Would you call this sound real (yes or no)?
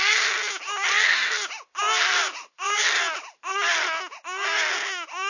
yes